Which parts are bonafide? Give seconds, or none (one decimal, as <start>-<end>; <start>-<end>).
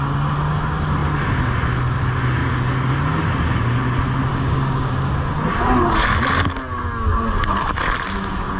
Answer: 0.0-4.3; 4.9-8.6